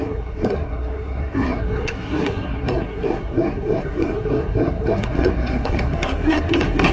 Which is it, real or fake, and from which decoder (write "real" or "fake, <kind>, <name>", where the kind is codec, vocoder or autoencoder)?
fake, codec, SNAC